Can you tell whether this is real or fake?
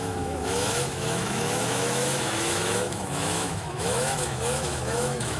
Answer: fake